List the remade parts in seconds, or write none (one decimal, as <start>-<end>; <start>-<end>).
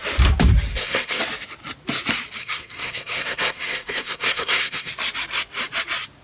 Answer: 0.7-1.2; 2.4-4.9